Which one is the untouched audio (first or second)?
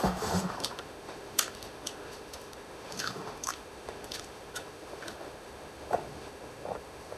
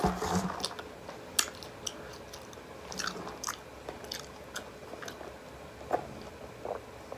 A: second